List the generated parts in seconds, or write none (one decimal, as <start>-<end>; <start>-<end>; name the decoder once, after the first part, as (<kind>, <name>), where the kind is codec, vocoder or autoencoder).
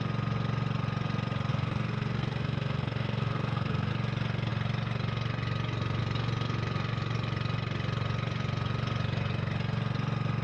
1.5-3.9 (codec, SNAC)